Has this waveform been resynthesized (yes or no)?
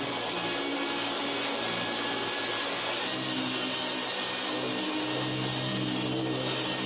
no